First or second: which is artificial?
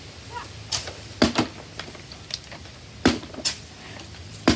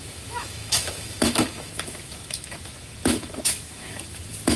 second